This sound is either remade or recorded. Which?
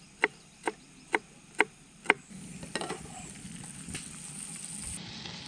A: recorded